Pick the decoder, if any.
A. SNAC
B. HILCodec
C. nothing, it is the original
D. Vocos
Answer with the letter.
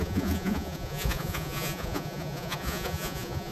D